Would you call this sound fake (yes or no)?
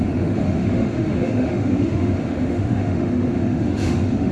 yes